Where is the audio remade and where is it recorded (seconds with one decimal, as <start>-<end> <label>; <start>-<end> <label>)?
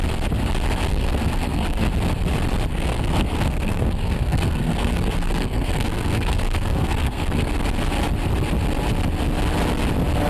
0.0-0.9 recorded; 0.9-1.9 remade; 1.9-2.7 recorded; 2.7-7.5 remade; 7.5-10.3 recorded